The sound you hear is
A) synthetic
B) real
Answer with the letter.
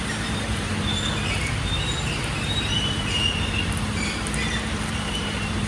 A